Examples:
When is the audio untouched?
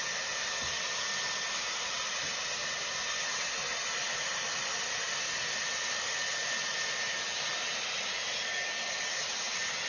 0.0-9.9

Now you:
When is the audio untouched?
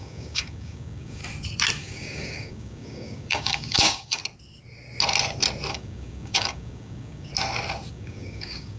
1.2-1.8; 4.2-5.7; 7.3-7.9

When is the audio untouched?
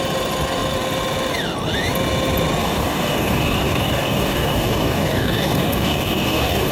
0.0-2.6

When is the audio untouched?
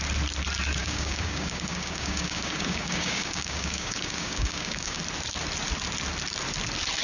0.0-0.8; 5.0-7.0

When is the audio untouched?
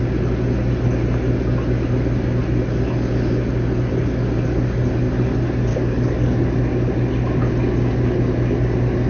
0.0-5.7; 6.3-9.1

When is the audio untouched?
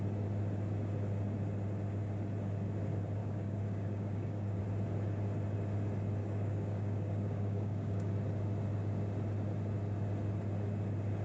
0.0-3.2; 4.6-6.2; 8.1-11.2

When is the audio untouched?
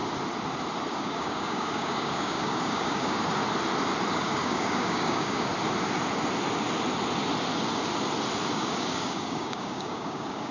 0.0-0.9; 3.4-4.1; 5.5-8.5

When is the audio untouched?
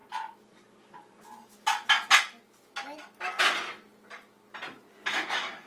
0.0-5.1